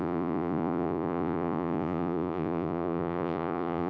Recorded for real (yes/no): no